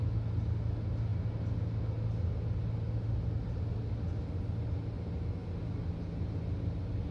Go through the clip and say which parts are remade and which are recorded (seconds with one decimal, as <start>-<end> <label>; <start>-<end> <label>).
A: 0.0-7.1 recorded